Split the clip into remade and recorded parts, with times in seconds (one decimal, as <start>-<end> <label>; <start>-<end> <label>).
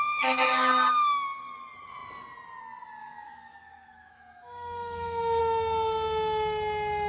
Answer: 0.0-3.0 recorded; 3.0-5.4 remade; 5.4-7.1 recorded